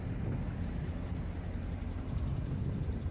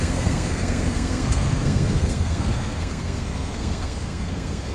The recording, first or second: first